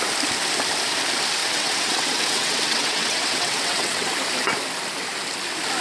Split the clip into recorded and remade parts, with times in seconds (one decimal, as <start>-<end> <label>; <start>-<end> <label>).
0.0-1.4 recorded; 1.4-4.1 remade; 4.1-5.8 recorded